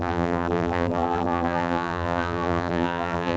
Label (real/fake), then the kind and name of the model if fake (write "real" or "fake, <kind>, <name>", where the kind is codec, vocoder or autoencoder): fake, vocoder, BigVGAN v2